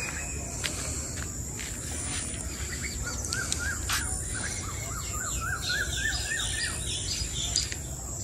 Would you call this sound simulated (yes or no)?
no